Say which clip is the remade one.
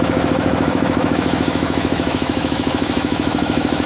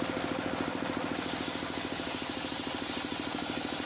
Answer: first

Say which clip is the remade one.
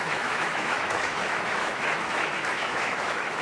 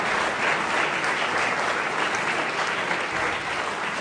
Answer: first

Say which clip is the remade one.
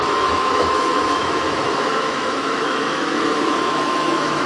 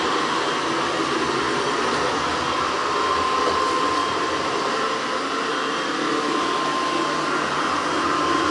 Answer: first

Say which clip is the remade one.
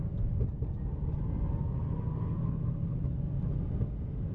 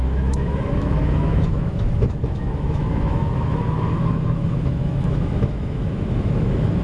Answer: second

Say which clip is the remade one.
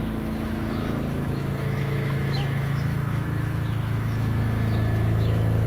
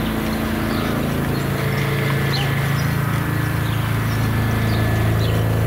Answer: first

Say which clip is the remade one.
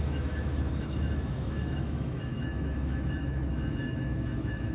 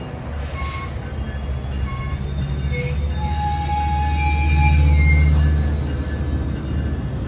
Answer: first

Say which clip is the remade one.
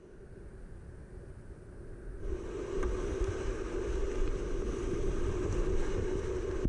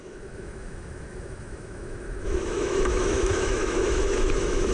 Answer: second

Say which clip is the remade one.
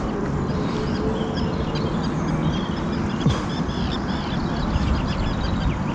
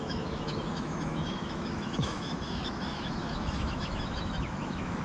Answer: second